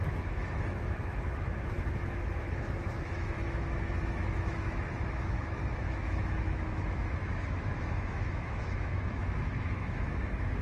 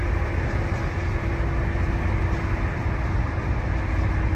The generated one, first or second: first